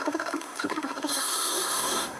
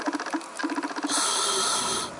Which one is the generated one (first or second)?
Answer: first